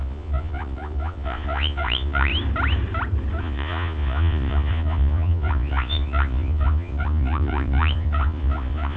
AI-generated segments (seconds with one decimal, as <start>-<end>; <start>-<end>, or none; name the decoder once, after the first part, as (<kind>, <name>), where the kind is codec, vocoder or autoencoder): 0.0-2.3 (vocoder, Vocos); 3.4-9.0